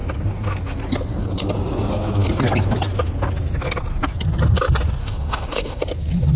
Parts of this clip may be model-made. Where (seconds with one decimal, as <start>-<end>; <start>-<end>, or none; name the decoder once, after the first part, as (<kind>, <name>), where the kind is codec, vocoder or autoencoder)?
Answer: 5.0-5.8 (autoencoder, DAC-VAE)